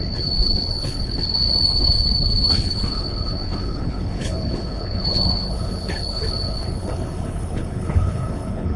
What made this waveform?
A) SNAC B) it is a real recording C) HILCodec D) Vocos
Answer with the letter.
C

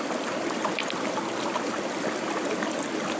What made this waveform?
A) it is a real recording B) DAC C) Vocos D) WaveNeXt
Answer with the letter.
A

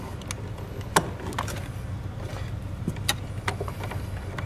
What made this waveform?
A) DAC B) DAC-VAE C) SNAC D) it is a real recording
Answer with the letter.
D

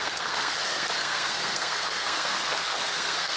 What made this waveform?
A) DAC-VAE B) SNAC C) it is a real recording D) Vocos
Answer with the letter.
B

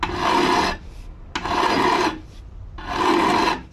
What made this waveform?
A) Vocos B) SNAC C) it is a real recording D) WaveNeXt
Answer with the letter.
C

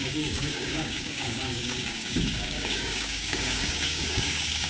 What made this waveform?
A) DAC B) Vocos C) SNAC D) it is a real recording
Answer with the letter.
A